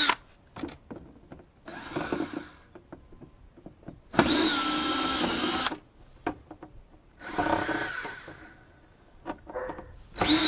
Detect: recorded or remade recorded